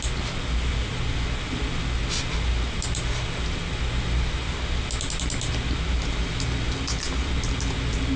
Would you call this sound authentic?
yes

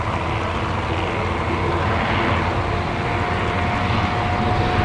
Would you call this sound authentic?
yes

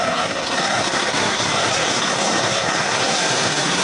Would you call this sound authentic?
no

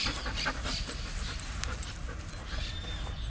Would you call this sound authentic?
yes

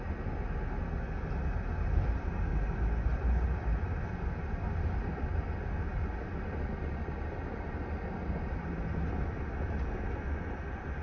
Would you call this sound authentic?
yes